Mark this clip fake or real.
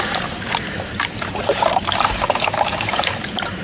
fake